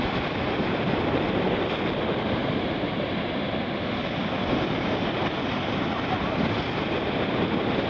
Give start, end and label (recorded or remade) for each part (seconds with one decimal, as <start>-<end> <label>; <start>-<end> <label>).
0.0-7.9 recorded